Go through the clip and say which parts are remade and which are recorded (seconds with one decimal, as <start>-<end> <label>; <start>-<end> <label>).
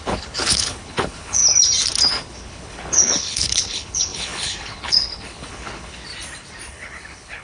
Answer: 0.0-1.4 remade; 1.4-2.1 recorded; 2.1-6.1 remade; 6.1-6.7 recorded; 6.7-7.4 remade